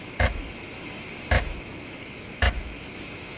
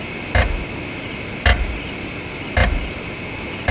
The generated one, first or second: first